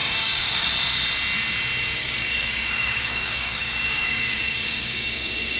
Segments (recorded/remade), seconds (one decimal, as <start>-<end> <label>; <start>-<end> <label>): 0.0-0.7 remade; 0.7-2.0 recorded; 2.0-5.6 remade